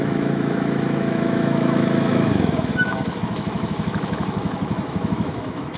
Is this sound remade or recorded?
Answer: remade